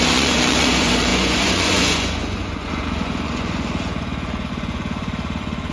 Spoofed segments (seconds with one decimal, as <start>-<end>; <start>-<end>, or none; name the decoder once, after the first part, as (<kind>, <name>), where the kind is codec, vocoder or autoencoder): 0.0-5.7 (vocoder, Vocos)